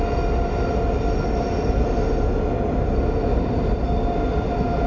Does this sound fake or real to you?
real